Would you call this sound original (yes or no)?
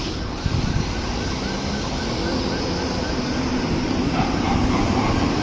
yes